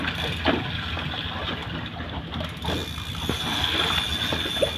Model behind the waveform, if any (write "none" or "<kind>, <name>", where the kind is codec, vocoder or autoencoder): none